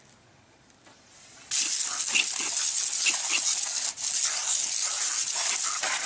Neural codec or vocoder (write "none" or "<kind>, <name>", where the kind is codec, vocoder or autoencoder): none